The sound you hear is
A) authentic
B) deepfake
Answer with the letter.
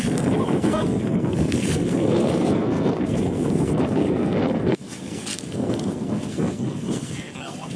B